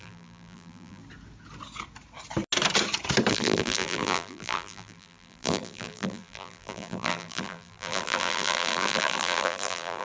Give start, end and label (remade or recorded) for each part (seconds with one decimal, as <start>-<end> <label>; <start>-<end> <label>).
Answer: 0.0-1.0 remade; 1.0-3.3 recorded; 3.3-10.0 remade